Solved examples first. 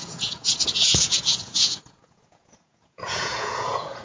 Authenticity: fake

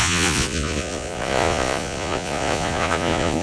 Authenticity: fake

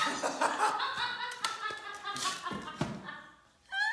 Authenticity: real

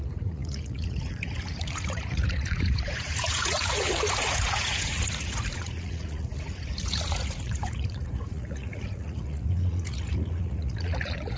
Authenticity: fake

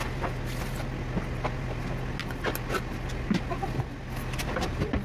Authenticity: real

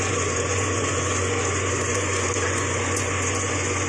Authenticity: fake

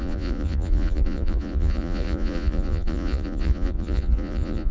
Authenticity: fake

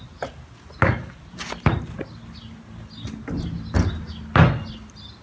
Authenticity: real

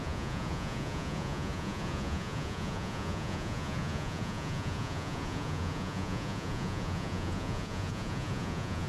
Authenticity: fake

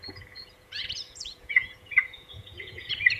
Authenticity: fake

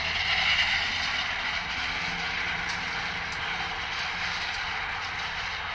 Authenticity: real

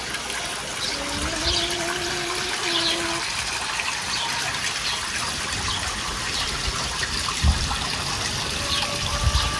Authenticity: real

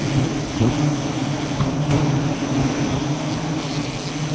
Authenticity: real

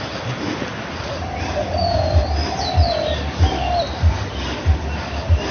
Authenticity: real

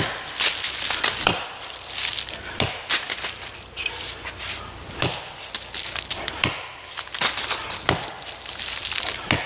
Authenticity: real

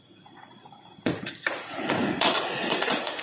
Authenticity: fake